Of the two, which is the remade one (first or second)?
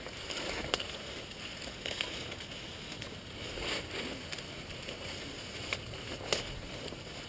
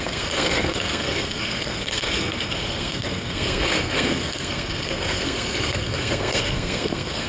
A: second